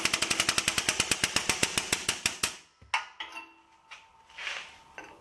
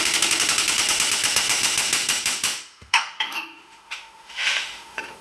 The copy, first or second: second